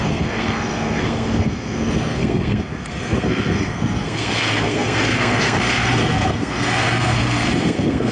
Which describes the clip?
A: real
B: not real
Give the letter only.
B